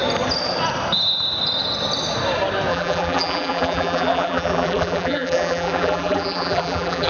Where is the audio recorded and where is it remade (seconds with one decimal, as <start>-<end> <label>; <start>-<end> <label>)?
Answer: 0.0-2.7 recorded; 2.7-7.1 remade